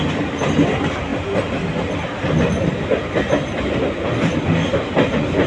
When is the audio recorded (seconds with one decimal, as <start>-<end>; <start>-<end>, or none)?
0.0-5.5